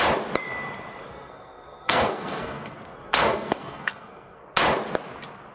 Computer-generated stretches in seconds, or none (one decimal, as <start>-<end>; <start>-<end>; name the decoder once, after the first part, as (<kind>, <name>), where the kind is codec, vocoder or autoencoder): 1.1-4.4 (codec, SNAC)